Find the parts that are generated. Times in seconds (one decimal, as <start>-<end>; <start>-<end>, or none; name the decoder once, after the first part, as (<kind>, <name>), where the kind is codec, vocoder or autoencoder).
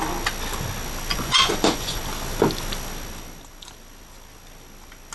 1.1-2.0 (vocoder, Vocos)